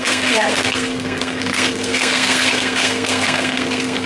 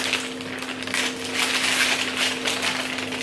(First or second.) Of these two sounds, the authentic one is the second